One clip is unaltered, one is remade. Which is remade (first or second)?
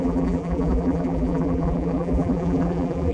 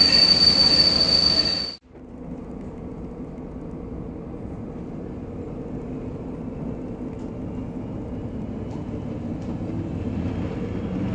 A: first